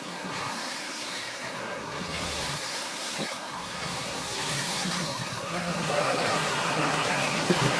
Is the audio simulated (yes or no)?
yes